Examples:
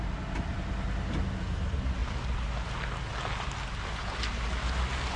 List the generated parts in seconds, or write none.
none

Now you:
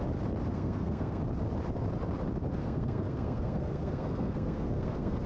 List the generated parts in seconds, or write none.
0.5-1.2 (codec, SNAC); 2.6-5.3

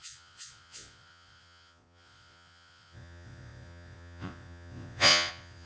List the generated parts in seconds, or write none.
0.0-5.7 (vocoder, Vocos)

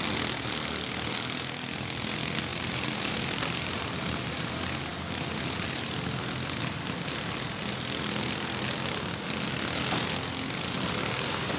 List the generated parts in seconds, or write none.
2.5-4.5 (vocoder, BigVGAN v2)

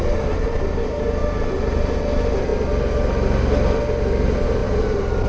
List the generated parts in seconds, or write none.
1.2-1.7 (vocoder, BigVGAN v2); 4.6-5.3

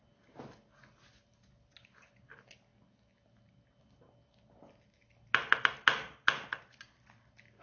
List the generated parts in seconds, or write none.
none

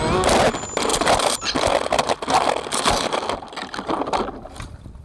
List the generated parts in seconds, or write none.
none

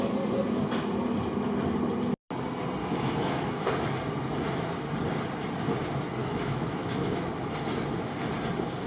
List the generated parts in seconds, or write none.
2.8-3.7 (autoencoder, DAC-VAE); 6.2-7.3